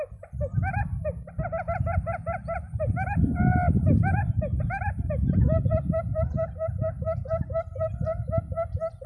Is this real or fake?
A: real